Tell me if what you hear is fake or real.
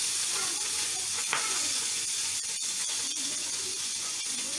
fake